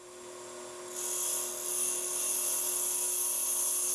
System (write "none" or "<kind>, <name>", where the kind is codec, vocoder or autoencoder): none